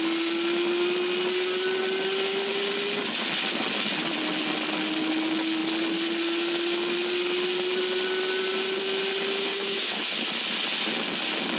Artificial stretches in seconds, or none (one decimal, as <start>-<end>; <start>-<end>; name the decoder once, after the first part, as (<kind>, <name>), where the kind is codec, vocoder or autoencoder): 9.5-10.3 (autoencoder, DAC-VAE)